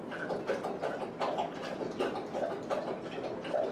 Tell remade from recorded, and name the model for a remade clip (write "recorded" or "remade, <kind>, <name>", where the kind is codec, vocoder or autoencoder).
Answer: recorded